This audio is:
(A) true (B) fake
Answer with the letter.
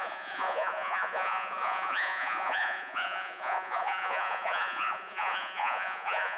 B